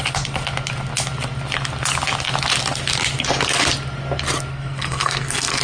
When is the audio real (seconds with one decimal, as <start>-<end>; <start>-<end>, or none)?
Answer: 0.0-4.5